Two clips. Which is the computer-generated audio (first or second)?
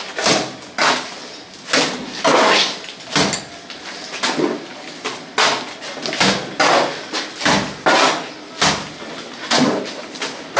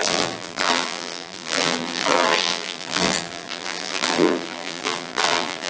second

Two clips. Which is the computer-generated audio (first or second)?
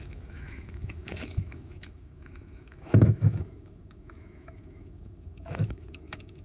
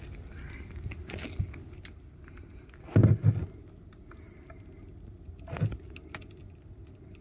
first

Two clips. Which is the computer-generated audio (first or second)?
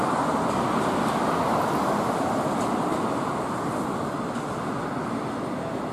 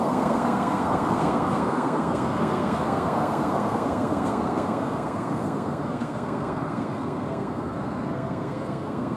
second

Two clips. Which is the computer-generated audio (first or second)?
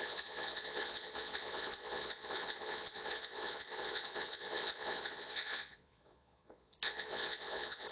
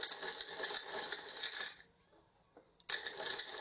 first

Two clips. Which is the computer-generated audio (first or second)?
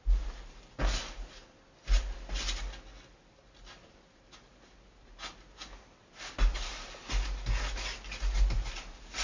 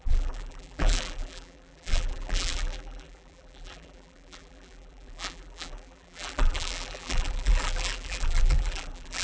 second